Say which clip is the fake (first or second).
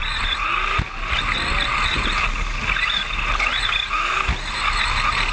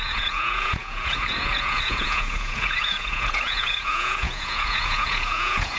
second